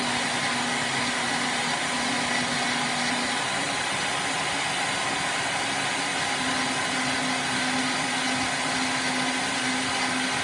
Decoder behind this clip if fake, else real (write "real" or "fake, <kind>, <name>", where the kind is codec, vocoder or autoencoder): real